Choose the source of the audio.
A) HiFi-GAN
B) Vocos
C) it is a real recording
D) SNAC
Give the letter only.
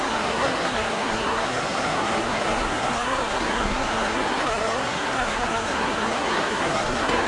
D